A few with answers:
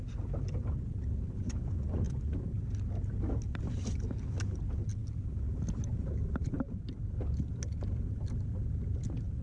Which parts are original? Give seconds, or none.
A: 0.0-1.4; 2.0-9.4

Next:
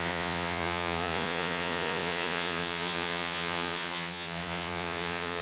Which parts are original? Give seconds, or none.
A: none

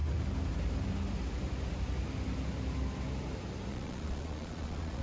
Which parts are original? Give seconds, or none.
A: 0.0-3.7

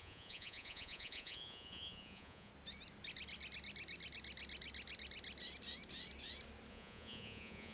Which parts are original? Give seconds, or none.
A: 2.5-6.7

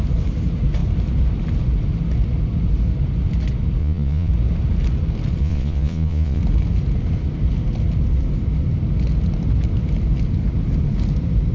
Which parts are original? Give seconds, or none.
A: 0.0-3.8; 4.3-5.4; 6.4-11.5

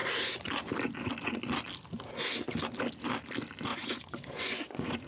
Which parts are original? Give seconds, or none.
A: 0.0-3.7

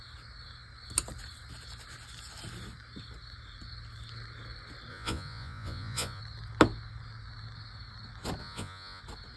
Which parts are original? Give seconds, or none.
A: 0.0-4.9; 6.2-8.4; 9.0-9.4

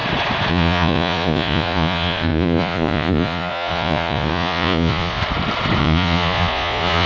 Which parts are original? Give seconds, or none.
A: 0.0-0.5; 5.2-5.8